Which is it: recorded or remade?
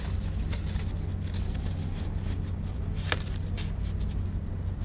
recorded